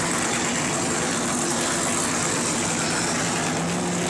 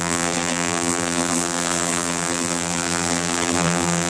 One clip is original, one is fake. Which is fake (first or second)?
second